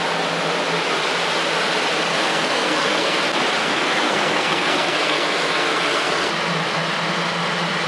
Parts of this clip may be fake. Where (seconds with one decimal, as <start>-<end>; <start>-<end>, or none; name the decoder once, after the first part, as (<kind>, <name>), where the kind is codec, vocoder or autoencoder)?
2.1-3.2 (codec, SNAC); 3.6-6.3